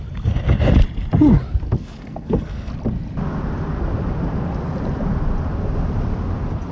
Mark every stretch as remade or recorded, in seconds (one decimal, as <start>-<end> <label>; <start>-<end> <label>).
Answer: 0.0-1.8 recorded; 1.8-2.7 remade; 2.7-6.7 recorded